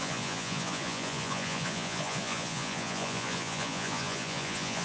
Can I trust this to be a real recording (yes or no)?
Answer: no